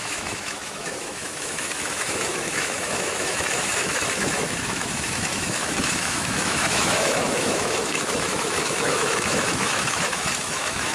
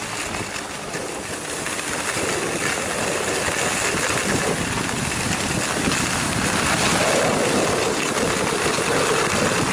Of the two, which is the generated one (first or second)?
first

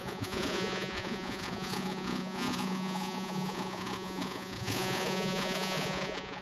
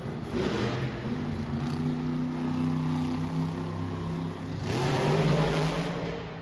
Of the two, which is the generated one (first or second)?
first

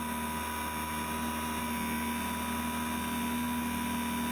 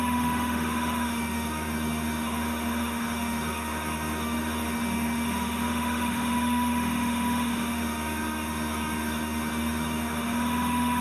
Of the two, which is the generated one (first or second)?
second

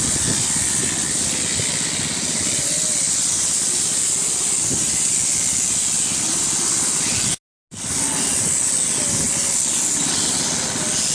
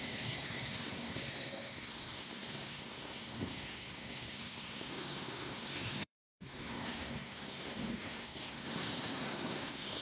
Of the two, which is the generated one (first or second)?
second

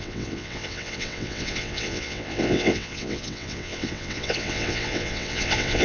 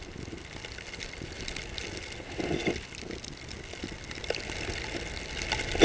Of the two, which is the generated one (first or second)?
first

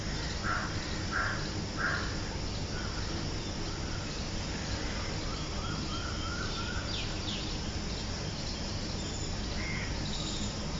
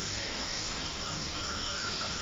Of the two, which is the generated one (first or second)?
second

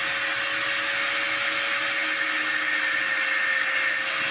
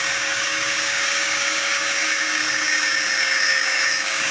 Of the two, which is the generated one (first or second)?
second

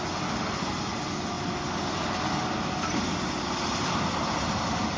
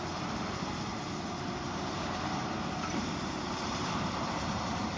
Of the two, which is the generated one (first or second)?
second